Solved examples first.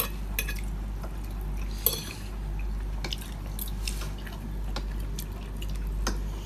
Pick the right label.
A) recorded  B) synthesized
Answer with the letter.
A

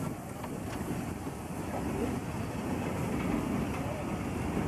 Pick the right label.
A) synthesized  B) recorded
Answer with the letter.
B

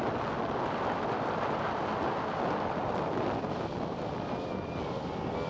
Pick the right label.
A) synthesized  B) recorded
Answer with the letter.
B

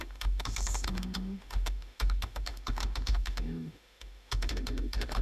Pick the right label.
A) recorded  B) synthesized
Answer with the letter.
B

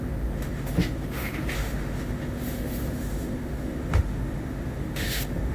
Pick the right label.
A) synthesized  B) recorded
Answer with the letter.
A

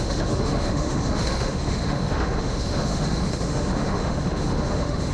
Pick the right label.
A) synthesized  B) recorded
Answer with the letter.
A